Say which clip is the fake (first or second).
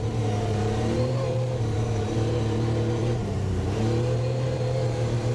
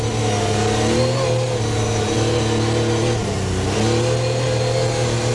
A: first